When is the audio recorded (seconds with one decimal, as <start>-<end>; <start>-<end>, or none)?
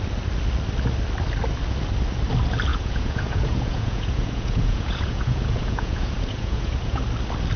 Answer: 0.0-2.7; 7.1-7.6